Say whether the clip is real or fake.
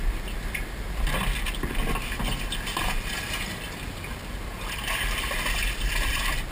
real